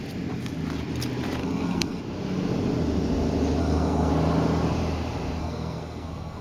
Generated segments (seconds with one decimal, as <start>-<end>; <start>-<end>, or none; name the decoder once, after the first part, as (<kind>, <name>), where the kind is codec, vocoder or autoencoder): 1.4-2.0 (codec, SNAC); 3.6-4.1; 5.4-6.4